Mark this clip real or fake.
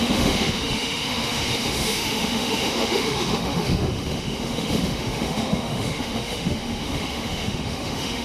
fake